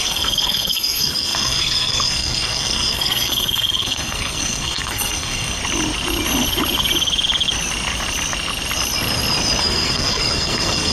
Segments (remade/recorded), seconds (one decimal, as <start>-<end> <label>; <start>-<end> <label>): 0.0-5.6 remade; 5.6-9.6 recorded; 9.6-10.9 remade